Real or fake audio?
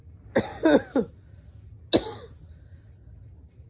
real